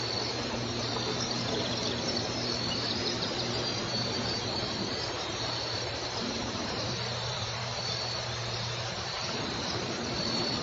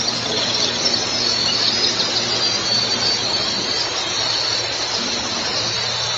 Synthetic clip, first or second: first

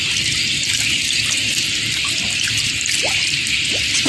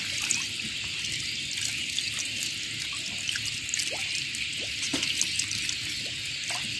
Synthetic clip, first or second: first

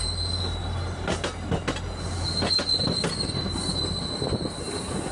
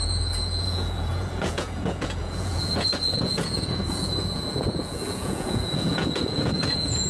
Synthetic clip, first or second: second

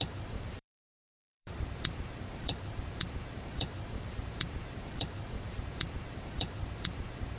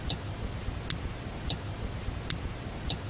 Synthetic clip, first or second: first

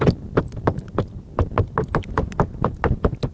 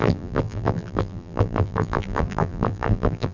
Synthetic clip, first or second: second